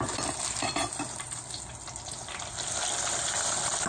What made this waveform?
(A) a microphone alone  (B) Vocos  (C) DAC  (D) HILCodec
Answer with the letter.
A